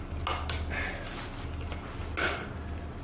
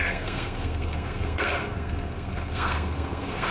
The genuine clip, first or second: first